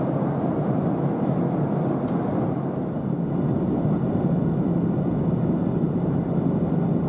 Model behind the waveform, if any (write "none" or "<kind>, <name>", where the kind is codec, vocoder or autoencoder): none